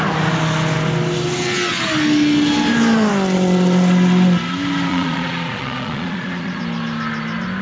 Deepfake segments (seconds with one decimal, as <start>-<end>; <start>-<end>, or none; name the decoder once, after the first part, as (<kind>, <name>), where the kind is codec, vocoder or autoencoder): 4.9-6.6 (vocoder, Vocos)